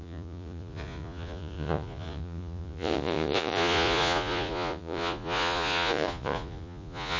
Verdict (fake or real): fake